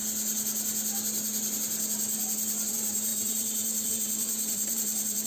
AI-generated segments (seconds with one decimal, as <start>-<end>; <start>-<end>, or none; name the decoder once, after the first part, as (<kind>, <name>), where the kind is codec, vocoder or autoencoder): 2.7-5.3 (vocoder, BigVGAN v2)